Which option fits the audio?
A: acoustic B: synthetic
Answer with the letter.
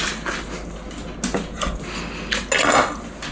A